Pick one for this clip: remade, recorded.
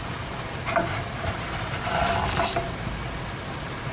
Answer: recorded